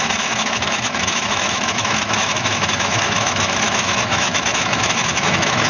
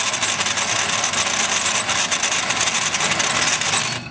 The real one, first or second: second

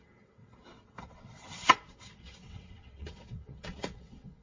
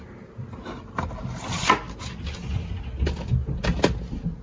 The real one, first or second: second